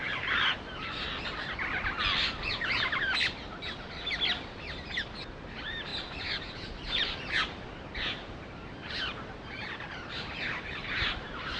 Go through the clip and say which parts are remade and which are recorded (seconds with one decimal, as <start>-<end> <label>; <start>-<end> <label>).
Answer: 0.0-1.1 remade; 1.1-5.3 recorded; 5.3-11.6 remade

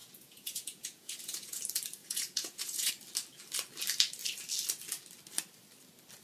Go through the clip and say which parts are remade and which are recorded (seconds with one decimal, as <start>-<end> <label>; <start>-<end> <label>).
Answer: 0.0-1.6 remade; 1.6-2.0 recorded; 2.0-2.9 remade; 2.9-6.2 recorded

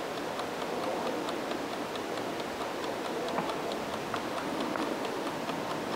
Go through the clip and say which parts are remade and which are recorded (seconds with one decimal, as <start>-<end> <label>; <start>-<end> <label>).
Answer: 0.0-6.0 recorded

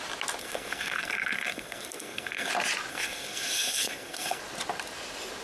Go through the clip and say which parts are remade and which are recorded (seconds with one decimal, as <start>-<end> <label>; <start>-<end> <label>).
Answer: 0.0-0.4 recorded; 0.4-2.5 remade; 2.5-2.9 recorded; 2.9-4.4 remade; 4.4-5.4 recorded

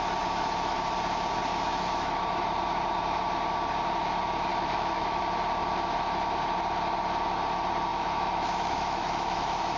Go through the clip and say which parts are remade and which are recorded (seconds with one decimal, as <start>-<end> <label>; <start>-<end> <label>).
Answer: 0.0-1.5 recorded; 1.5-2.2 remade; 2.2-4.5 recorded; 4.5-5.2 remade; 5.2-7.9 recorded; 7.9-9.8 remade

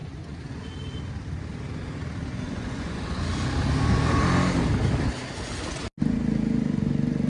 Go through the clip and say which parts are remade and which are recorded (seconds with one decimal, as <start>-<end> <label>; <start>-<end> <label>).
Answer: 0.0-0.7 remade; 0.7-2.3 recorded; 2.3-3.2 remade; 3.2-7.3 recorded